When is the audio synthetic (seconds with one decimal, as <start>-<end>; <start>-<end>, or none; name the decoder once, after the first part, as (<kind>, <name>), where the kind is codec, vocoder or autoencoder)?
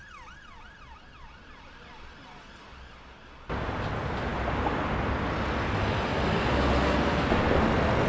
none